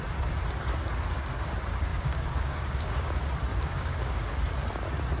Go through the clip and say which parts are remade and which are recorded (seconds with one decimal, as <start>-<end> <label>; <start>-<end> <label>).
0.0-1.9 recorded; 1.9-3.1 remade; 3.1-3.5 recorded; 3.5-4.4 remade; 4.4-5.2 recorded